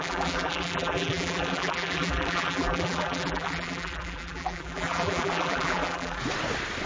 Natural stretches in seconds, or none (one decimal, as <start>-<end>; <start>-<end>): 6.2-6.9